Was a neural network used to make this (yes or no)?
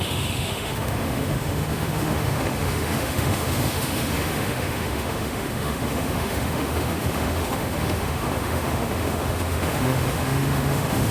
yes